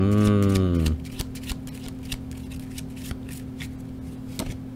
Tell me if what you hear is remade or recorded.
recorded